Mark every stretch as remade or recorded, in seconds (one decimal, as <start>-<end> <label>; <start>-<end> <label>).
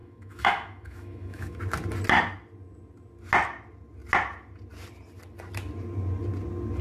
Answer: 0.0-1.6 remade; 1.6-6.8 recorded